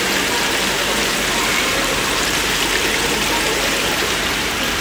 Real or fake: fake